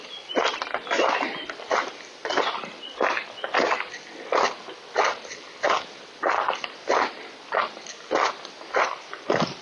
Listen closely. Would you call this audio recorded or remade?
recorded